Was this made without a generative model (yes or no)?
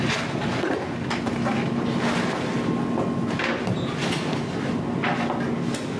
yes